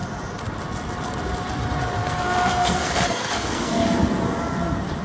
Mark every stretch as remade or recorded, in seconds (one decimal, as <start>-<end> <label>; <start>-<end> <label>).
0.0-2.0 recorded; 2.0-3.8 remade; 3.8-5.0 recorded